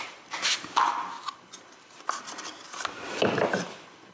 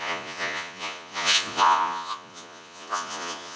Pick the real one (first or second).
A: first